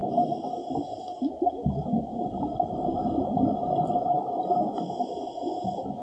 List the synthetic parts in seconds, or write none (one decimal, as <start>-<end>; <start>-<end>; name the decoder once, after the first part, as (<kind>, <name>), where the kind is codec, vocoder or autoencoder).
none